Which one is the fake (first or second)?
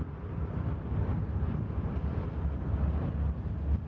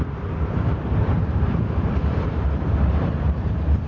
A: second